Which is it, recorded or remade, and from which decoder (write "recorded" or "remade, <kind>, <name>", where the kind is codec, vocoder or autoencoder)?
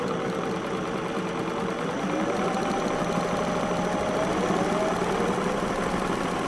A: recorded